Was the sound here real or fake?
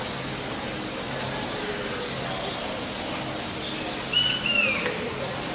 real